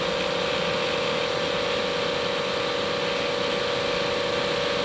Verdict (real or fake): real